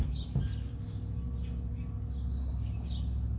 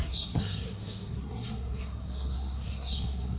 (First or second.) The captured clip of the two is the first